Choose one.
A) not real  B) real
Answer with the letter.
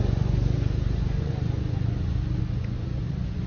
A